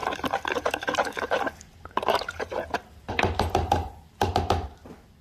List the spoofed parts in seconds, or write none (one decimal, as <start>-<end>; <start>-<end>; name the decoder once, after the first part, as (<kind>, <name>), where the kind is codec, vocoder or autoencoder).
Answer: 0.0-3.1 (vocoder, BigVGAN v2); 3.6-4.3